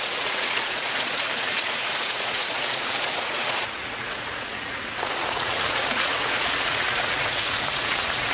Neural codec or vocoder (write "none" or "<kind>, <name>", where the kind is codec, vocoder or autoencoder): vocoder, Vocos